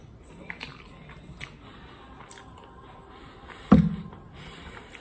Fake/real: real